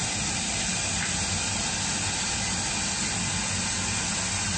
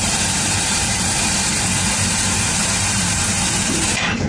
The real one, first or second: first